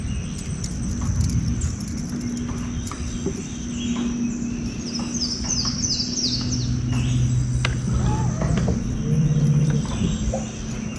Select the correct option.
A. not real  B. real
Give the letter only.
B